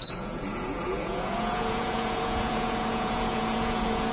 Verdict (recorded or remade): remade